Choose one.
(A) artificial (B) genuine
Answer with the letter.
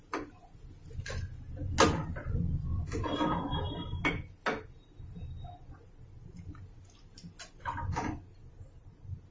B